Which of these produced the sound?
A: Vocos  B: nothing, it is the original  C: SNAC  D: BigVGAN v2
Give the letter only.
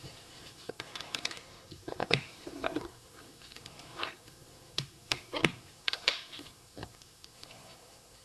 C